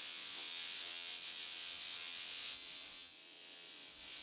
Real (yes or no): no